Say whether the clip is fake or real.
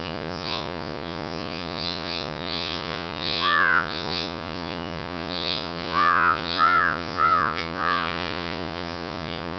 fake